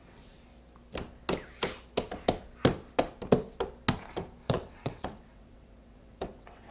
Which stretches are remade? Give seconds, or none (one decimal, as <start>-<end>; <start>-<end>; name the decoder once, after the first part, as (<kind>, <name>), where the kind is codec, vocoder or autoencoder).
0.0-0.5 (vocoder, WaveNeXt); 4.5-6.7